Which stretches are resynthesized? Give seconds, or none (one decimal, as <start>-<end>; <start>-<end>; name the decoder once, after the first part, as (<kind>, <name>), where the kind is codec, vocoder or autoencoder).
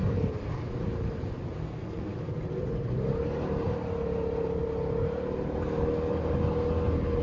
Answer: 1.6-2.1 (codec, SNAC)